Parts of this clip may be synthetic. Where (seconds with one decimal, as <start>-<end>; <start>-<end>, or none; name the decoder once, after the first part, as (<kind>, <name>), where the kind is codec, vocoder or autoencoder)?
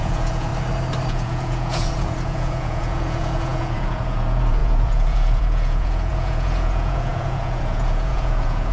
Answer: 0.0-0.5 (vocoder, Vocos); 1.1-8.7